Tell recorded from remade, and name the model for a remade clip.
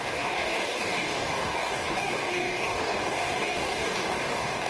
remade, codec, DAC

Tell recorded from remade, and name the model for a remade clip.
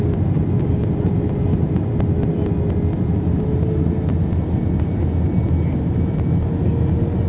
recorded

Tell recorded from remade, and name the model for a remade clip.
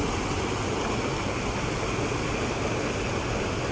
recorded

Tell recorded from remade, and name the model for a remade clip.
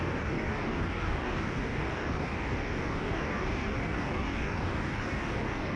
remade, codec, DAC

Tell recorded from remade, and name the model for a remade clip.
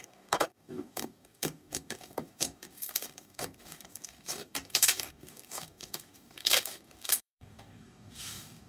remade, codec, DAC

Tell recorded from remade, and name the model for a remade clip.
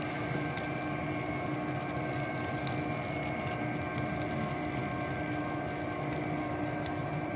recorded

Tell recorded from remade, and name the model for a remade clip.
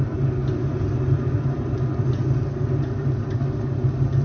recorded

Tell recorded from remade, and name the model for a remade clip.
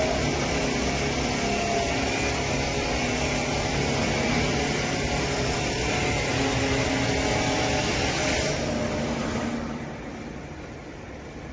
recorded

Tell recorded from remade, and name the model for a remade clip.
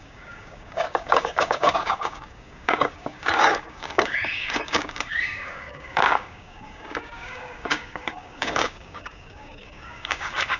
remade, codec, DAC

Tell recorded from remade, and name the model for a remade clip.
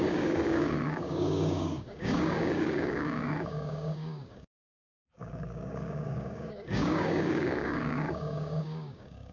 remade, codec, DAC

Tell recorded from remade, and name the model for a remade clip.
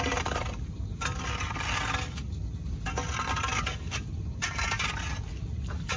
recorded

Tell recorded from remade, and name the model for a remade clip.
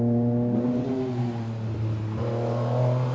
recorded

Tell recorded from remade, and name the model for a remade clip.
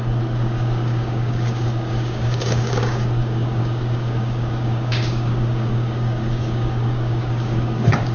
remade, codec, DAC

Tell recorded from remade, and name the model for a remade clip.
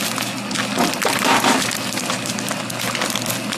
recorded